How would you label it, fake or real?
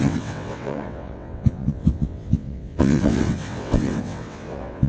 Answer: fake